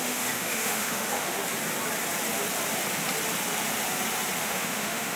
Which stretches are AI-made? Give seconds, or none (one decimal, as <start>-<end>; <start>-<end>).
0.0-1.3; 4.4-5.2